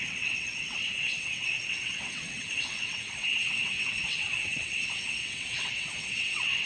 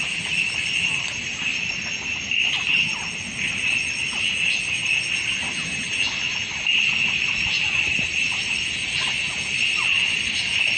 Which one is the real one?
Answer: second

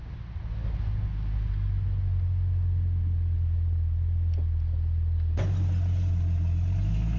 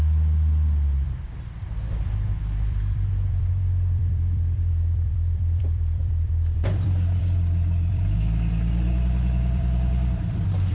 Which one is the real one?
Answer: first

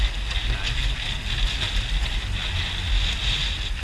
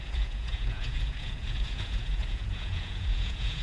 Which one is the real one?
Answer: first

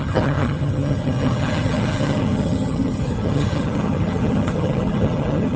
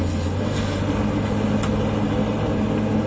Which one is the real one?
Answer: second